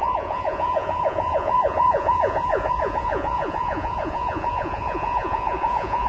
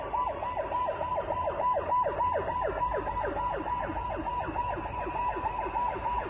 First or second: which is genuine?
second